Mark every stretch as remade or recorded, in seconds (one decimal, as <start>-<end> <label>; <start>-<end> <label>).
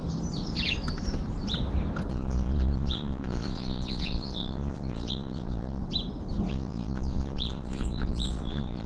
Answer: 0.0-2.1 recorded; 2.1-5.8 remade; 5.8-6.5 recorded; 6.5-8.9 remade